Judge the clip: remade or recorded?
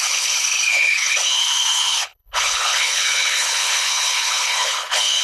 remade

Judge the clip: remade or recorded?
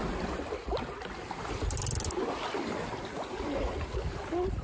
recorded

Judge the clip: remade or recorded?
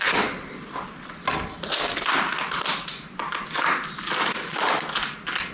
recorded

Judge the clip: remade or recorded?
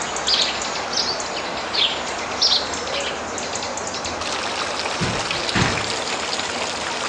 recorded